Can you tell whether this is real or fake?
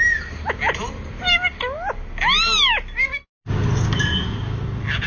real